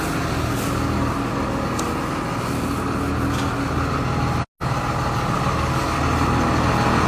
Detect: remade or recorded recorded